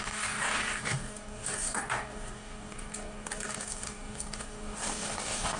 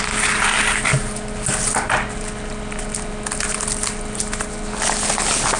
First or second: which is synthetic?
first